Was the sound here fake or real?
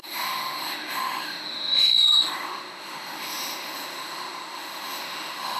fake